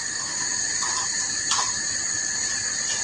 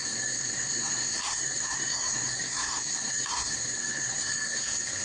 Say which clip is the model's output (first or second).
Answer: second